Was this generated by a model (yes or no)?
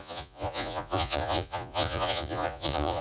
yes